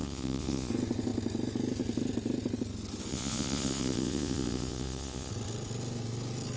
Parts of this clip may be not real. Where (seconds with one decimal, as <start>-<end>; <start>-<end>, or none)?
0.0-0.7; 3.1-5.3